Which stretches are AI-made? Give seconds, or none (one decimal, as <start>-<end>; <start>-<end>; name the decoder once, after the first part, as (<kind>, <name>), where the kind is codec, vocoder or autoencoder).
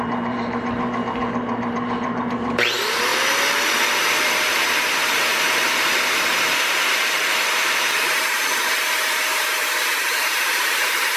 0.0-3.1 (vocoder, BigVGAN v2); 4.1-11.2